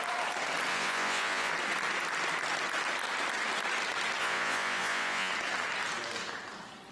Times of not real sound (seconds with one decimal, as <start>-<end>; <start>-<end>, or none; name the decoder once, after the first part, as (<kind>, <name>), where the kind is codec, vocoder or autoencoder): 0.7-1.5 (vocoder, Vocos); 4.2-5.3